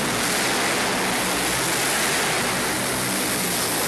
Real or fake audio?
real